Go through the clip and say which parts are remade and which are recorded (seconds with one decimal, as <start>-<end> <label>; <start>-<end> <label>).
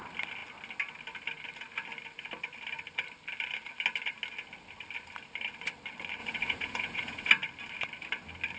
0.0-6.2 recorded; 6.2-7.3 remade; 7.3-8.6 recorded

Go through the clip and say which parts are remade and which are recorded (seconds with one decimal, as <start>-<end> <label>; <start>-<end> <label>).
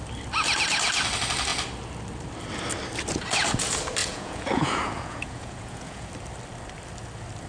0.0-4.0 recorded; 4.0-6.1 remade; 6.1-7.5 recorded